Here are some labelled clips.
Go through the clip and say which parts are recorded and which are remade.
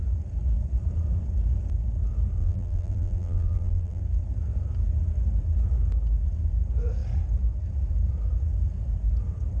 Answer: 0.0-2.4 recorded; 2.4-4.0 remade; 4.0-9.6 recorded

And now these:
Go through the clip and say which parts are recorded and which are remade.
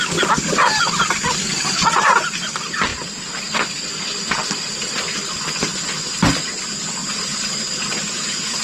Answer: 0.0-7.0 recorded; 7.0-7.5 remade; 7.5-8.6 recorded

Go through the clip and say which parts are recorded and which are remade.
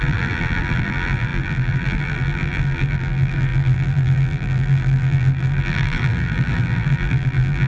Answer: 0.0-7.7 remade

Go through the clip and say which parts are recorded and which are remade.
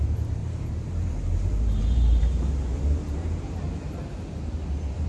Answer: 0.0-0.4 recorded; 0.4-3.5 remade; 3.5-5.1 recorded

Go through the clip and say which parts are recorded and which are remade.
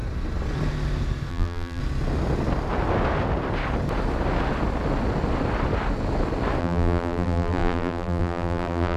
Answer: 0.0-1.3 recorded; 1.3-1.8 remade; 1.8-6.6 recorded; 6.6-9.0 remade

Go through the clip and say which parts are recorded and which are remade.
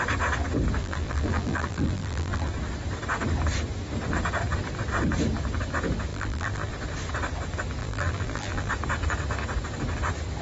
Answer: 0.0-0.8 recorded; 0.8-2.5 remade; 2.5-6.1 recorded; 6.1-6.7 remade; 6.7-7.8 recorded; 7.8-8.7 remade; 8.7-10.4 recorded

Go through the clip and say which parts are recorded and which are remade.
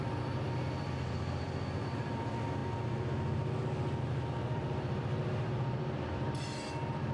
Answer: 0.0-2.6 remade; 2.6-4.0 recorded; 4.0-7.1 remade